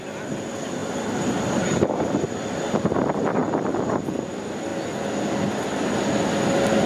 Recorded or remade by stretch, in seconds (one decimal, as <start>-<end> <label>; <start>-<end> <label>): 0.0-6.9 recorded